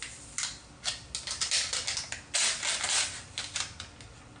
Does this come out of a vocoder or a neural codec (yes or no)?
no